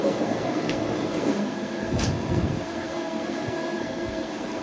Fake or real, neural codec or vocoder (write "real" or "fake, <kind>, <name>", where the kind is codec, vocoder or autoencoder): fake, codec, SNAC